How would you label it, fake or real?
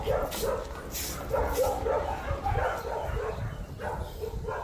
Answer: real